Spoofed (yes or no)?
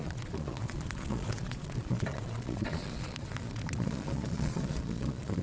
yes